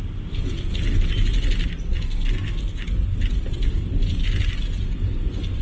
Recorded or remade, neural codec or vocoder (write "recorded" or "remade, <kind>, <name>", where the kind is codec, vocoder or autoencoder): recorded